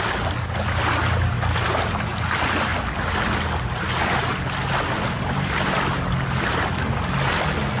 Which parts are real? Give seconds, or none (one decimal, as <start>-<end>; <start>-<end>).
0.0-7.8